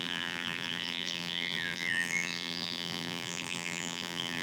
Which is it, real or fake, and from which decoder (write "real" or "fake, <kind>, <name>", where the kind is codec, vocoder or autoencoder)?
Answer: fake, vocoder, BigVGAN v2